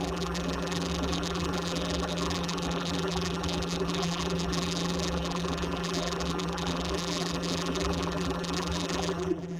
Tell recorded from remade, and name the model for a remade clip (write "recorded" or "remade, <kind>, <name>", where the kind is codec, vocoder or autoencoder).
remade, vocoder, BigVGAN v2